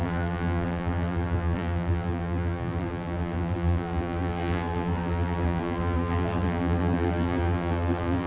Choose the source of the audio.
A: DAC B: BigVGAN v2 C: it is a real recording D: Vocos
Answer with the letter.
B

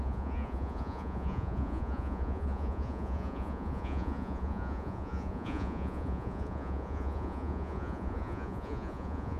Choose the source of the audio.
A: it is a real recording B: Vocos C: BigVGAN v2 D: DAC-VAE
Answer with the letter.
B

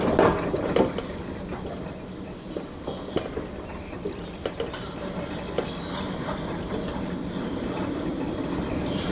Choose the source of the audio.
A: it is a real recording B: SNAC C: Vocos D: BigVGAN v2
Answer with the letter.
A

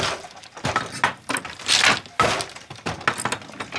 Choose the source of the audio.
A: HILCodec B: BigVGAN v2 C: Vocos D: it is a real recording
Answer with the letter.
D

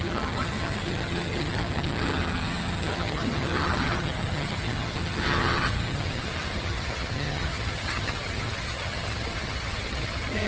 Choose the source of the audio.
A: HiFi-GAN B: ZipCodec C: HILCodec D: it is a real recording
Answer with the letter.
A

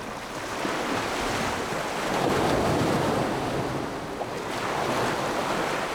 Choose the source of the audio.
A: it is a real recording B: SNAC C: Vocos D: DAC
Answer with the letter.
A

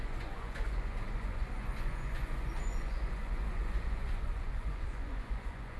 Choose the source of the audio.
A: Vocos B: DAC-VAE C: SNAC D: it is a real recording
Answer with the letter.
A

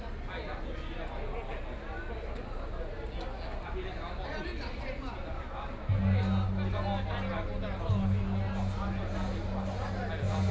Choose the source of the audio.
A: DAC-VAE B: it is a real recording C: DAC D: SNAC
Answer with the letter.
B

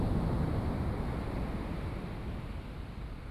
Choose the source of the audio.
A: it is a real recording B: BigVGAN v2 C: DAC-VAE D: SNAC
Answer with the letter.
A